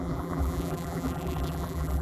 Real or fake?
fake